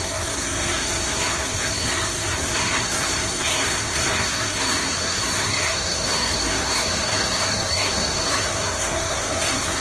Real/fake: fake